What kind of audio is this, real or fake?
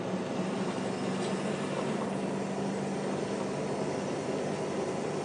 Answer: real